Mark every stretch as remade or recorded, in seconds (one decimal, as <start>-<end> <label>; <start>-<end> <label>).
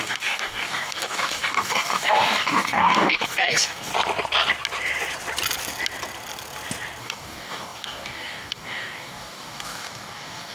0.0-3.9 remade; 3.9-7.0 recorded; 7.0-10.5 remade